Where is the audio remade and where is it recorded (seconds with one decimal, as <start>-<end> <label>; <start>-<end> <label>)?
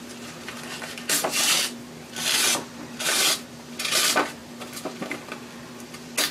0.0-6.3 recorded